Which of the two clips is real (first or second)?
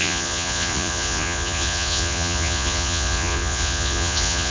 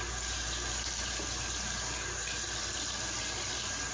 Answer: second